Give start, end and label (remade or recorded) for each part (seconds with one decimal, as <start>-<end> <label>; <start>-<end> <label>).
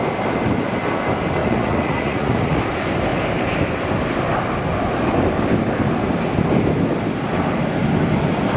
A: 0.0-1.4 recorded; 1.4-2.6 remade; 2.6-8.6 recorded